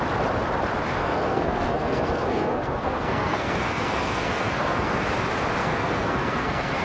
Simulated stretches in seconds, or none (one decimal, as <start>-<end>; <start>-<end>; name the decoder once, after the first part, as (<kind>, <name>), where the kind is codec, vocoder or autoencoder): 1.0-5.1 (codec, SNAC); 5.6-6.8